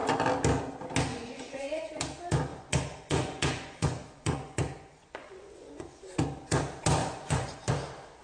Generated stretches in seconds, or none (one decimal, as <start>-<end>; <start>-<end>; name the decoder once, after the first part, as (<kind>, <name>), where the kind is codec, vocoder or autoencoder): 1.1-1.9 (vocoder, Vocos); 2.5-6.1; 7.0-7.7